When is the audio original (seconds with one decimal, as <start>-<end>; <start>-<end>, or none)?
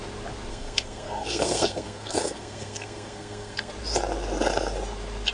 0.0-0.5; 3.7-5.3